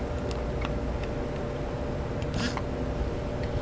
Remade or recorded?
recorded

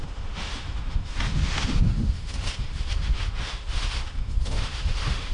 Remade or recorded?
remade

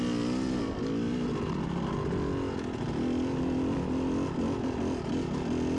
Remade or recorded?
recorded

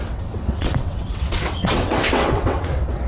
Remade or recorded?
remade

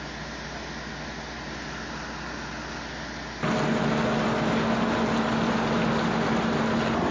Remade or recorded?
recorded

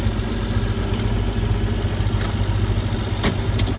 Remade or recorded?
recorded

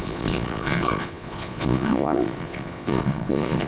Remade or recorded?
remade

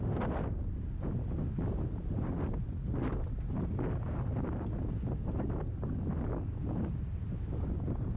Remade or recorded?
recorded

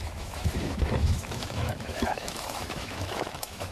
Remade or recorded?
remade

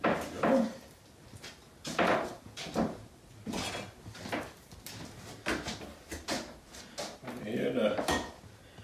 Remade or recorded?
recorded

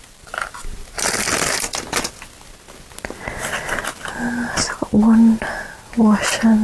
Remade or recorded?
recorded